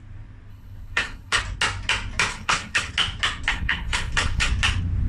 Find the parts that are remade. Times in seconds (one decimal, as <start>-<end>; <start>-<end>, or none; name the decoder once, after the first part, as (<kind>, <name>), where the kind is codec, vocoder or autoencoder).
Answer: 0.5-1.4 (codec, HILCodec); 2.3-2.9; 3.5-4.5